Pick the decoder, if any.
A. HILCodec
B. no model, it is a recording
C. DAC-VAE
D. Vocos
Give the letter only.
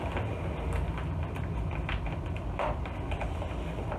B